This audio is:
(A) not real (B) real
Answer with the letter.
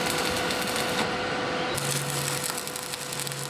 B